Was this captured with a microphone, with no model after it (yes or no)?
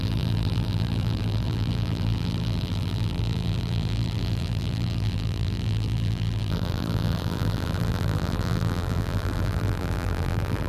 no